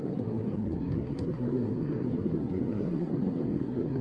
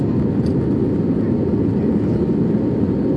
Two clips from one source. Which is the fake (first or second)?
first